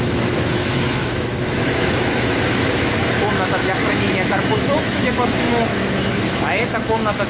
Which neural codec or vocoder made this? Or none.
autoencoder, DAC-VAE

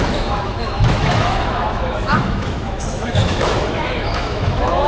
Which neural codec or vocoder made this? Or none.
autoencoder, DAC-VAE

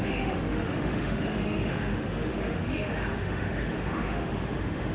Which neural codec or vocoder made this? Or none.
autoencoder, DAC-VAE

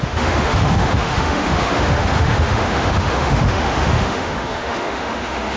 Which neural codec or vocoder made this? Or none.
autoencoder, DAC-VAE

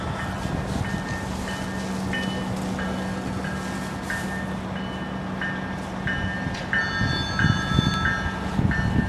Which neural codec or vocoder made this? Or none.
none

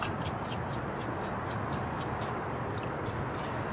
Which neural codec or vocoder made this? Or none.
none